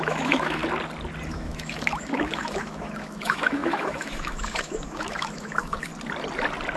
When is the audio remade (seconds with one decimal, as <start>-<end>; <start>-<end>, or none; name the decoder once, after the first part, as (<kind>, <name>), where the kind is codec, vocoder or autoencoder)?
0.0-0.6 (autoencoder, DAC-VAE); 1.3-5.9